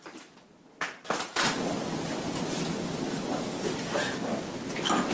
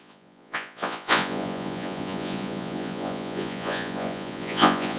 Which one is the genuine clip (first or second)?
first